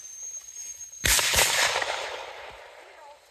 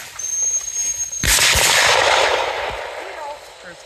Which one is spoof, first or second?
first